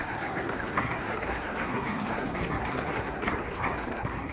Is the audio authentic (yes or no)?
no